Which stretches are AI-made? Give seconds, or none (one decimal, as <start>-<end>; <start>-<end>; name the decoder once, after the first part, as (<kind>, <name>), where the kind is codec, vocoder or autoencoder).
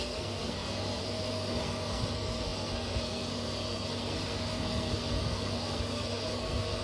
0.0-6.8 (codec, SNAC)